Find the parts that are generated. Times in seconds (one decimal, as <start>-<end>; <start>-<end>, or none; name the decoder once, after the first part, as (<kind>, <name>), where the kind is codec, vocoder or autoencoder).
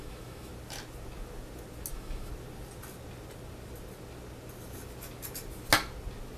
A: 0.0-0.5 (autoencoder, DAC-VAE); 1.9-2.3